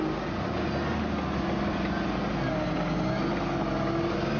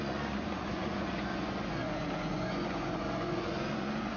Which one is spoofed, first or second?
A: second